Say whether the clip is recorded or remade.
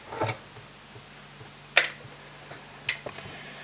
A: recorded